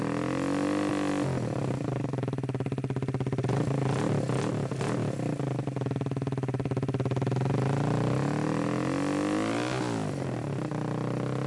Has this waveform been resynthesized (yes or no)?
no